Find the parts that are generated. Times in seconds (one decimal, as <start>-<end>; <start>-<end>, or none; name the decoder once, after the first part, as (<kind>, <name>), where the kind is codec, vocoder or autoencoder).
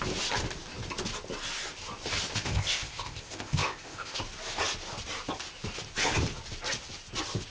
2.4-4.2 (codec, ZipCodec)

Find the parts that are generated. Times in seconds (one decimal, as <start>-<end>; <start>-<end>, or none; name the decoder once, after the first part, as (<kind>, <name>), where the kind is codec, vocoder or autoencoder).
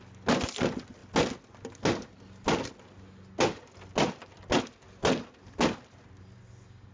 none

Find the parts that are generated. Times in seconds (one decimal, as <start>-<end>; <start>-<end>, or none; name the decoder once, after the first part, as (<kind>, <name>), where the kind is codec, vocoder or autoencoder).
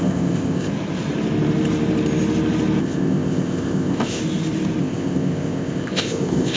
0.0-0.7 (codec, ZipCodec); 2.8-4.2; 4.8-6.6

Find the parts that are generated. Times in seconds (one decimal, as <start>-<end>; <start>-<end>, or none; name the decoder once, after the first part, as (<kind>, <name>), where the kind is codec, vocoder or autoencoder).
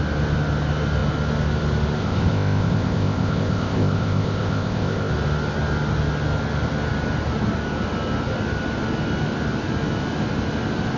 2.0-5.1 (codec, ZipCodec)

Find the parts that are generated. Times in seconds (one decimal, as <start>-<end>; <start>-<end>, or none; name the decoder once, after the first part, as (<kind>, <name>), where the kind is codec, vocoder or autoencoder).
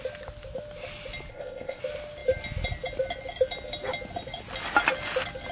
1.3-1.8 (codec, ZipCodec)